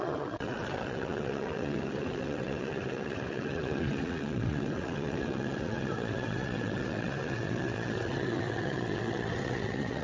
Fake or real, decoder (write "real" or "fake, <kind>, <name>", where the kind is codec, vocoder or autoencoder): fake, vocoder, WaveNeXt